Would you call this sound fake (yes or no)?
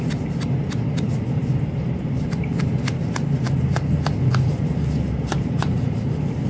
no